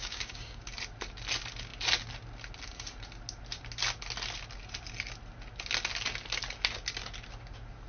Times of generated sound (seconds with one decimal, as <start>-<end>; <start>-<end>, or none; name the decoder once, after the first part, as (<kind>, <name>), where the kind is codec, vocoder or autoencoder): 0.0-0.6 (codec, DAC)